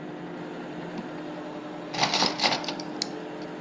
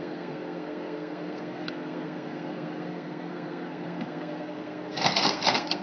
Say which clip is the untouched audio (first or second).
first